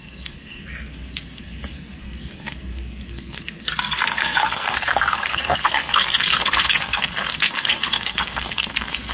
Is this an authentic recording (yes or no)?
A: no